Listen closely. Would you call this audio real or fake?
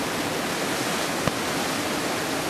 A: real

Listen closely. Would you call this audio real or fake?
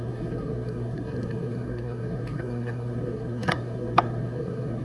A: fake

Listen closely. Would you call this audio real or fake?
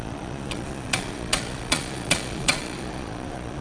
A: fake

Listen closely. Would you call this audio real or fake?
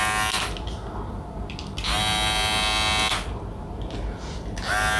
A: real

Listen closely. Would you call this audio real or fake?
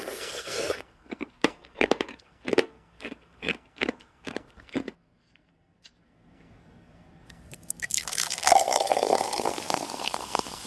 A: fake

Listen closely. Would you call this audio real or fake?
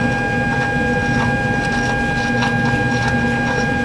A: real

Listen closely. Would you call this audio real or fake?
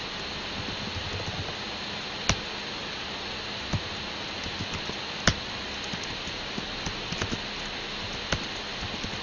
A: real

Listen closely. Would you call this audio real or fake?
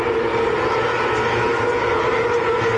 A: real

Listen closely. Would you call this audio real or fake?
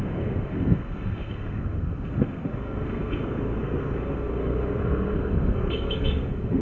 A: fake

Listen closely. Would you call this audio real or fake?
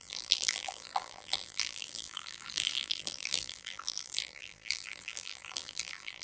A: fake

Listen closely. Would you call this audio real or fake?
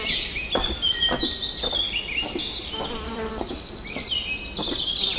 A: real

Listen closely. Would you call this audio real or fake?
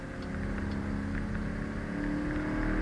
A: real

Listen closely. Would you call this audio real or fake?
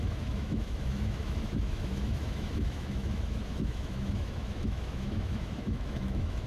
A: fake